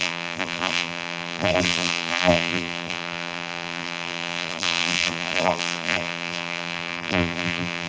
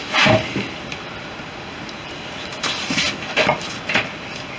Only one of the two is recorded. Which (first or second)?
second